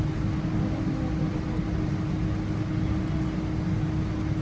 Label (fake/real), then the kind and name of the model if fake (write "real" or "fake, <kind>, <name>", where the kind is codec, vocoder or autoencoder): real